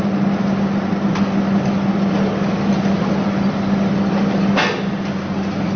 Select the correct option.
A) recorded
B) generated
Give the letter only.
A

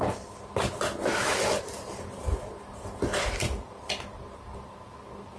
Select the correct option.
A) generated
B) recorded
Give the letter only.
B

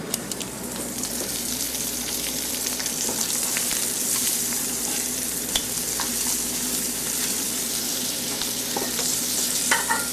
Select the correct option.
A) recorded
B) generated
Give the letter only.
B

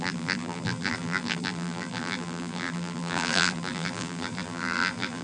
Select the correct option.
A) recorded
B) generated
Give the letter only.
B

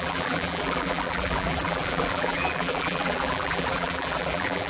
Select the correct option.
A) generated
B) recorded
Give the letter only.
A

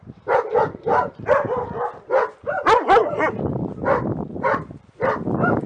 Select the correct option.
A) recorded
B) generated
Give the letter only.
B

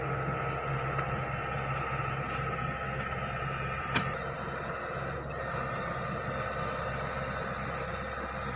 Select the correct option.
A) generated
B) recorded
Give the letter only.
B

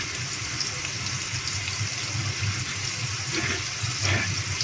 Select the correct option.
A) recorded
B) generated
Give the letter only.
A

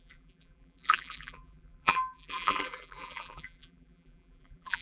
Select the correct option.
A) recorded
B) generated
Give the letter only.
B